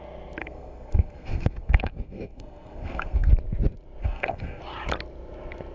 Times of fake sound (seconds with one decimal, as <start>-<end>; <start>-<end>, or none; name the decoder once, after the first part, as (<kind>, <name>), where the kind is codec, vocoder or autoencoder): 0.4-3.3 (codec, SNAC); 4.0-4.6